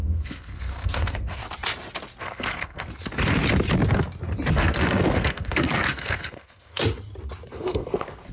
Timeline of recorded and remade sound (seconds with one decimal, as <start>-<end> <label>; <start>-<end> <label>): 0.0-1.4 remade; 1.4-2.2 recorded; 2.2-2.9 remade; 2.9-4.5 recorded; 4.5-6.8 remade; 6.8-7.5 recorded; 7.5-8.3 remade